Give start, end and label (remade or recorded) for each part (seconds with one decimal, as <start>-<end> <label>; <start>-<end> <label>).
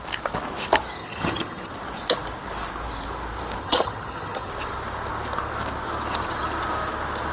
0.0-1.0 recorded; 1.0-1.7 remade; 1.7-3.6 recorded; 3.6-4.5 remade; 4.5-7.3 recorded